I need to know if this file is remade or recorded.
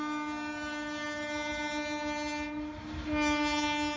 recorded